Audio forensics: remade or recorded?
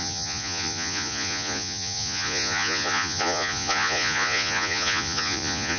remade